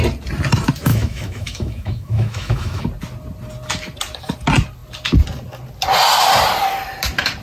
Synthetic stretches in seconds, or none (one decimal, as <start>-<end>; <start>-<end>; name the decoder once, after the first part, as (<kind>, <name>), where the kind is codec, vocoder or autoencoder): 0.9-2.8 (autoencoder, DAC-VAE)